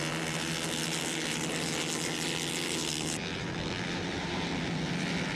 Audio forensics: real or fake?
real